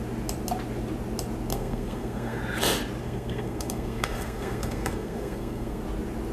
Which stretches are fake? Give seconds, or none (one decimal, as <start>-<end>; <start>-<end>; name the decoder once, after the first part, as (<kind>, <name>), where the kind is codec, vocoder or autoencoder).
1.5-2.4 (codec, SNAC); 3.0-5.8